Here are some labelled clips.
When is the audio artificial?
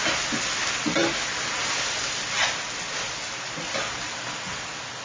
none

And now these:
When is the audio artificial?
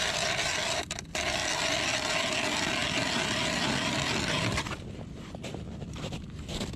none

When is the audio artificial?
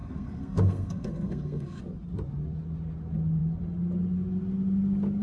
0.0-1.8 (codec, SNAC)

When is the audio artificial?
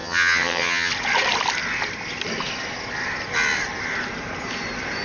0.0-0.9 (vocoder, HiFi-GAN)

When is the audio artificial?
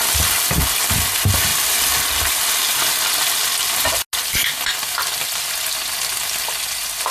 none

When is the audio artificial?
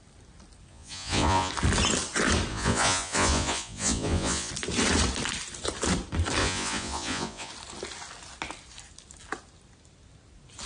0.7-1.5 (vocoder, Vocos); 2.5-4.5; 6.4-7.5